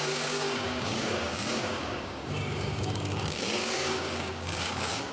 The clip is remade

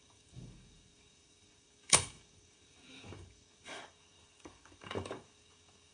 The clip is remade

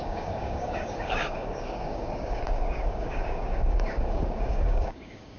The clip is remade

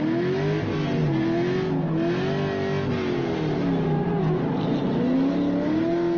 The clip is recorded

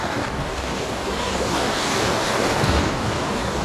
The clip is remade